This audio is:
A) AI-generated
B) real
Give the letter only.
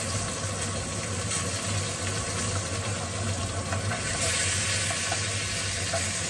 B